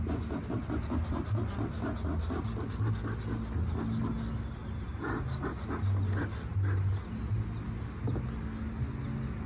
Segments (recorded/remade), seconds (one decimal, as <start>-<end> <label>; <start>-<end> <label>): 0.0-9.5 recorded